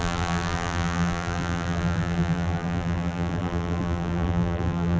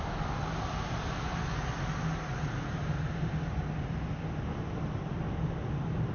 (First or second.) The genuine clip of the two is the second